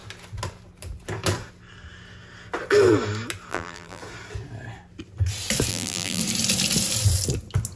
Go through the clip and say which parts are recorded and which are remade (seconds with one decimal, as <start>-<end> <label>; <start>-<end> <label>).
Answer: 0.0-3.5 recorded; 3.5-4.0 remade; 4.0-5.7 recorded; 5.7-6.2 remade; 6.2-7.8 recorded